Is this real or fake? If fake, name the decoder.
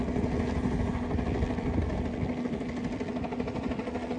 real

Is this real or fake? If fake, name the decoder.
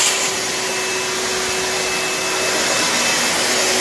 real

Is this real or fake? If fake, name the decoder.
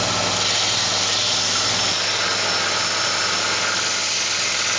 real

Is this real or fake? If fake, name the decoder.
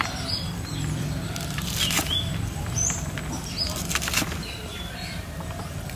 fake, vocoder, BigVGAN v2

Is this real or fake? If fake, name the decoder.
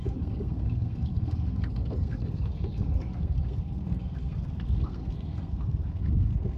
fake, codec, SNAC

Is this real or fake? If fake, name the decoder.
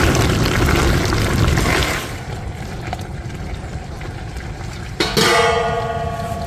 real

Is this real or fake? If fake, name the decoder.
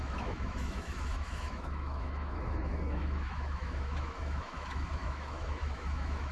fake, autoencoder, DAC-VAE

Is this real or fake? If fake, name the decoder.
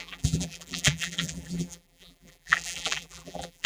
fake, vocoder, BigVGAN v2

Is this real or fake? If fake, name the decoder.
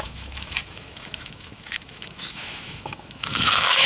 fake, autoencoder, DAC-VAE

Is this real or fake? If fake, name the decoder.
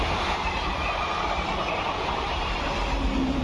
real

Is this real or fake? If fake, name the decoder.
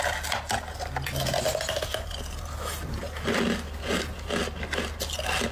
real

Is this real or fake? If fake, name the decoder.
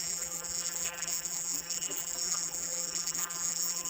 fake, vocoder, BigVGAN v2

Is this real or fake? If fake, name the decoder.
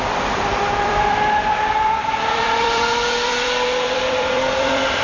fake, vocoder, BigVGAN v2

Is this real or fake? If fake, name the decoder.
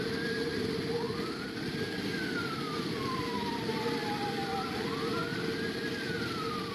real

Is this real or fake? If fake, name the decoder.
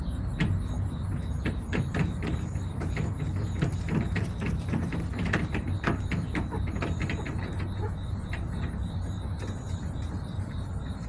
fake, vocoder, BigVGAN v2